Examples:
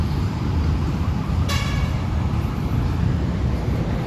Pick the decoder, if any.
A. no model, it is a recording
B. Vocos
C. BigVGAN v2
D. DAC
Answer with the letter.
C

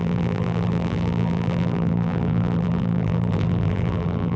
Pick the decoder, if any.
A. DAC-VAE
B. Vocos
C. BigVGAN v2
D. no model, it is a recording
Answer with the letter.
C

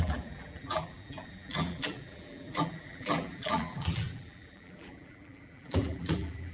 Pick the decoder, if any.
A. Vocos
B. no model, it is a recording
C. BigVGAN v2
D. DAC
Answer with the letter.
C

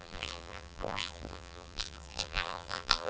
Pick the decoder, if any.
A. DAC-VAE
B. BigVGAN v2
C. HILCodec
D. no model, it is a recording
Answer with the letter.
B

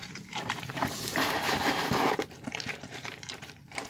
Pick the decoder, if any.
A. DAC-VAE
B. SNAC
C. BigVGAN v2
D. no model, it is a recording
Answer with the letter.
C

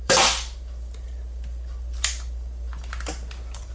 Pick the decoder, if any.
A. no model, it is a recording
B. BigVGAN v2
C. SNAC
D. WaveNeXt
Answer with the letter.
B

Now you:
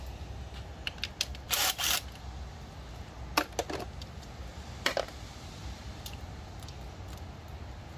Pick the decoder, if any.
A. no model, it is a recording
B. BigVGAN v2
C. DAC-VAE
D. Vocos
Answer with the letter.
A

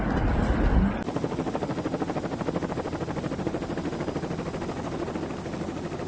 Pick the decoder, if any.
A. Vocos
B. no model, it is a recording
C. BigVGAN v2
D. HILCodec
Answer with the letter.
B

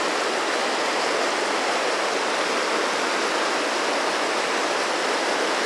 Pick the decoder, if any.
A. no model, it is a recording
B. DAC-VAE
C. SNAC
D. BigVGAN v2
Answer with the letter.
A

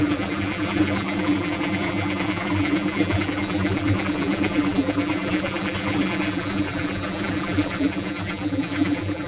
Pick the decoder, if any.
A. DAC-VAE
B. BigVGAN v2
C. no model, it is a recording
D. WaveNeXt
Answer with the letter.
B